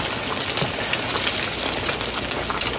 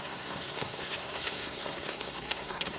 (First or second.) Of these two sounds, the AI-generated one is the second